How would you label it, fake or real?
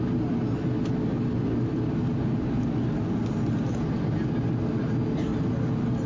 real